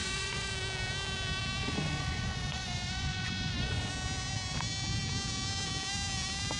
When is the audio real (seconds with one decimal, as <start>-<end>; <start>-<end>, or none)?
0.5-1.6; 3.9-6.6